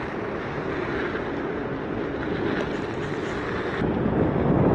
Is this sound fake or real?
real